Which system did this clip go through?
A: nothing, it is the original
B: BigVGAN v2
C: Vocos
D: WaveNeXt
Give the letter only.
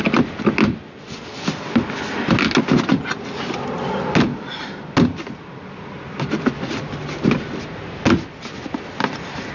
A